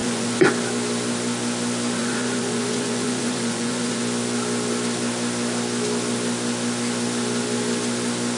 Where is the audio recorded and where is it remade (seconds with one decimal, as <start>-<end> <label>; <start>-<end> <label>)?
0.0-0.5 remade; 0.5-2.0 recorded; 2.0-4.0 remade; 4.0-8.4 recorded